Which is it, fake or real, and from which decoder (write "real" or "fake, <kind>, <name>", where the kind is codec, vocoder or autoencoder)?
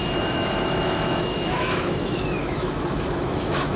fake, autoencoder, DAC-VAE